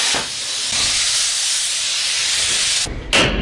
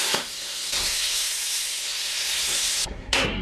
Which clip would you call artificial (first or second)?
second